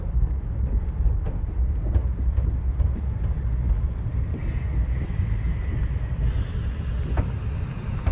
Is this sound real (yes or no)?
yes